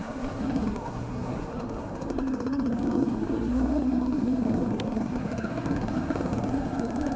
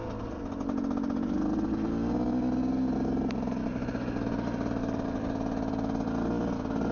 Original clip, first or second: second